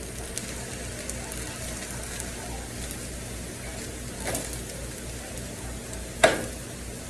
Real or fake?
real